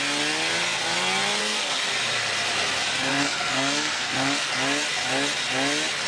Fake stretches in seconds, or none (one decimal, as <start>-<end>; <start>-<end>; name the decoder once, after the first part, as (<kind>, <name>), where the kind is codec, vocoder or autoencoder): 1.4-1.9 (codec, SNAC); 3.1-4.5